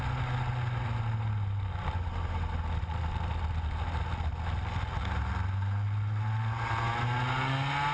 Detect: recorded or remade recorded